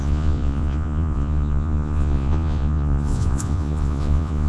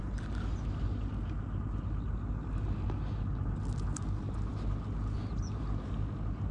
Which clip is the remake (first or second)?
first